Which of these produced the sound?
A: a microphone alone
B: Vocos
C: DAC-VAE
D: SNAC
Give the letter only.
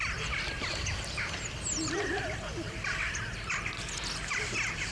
A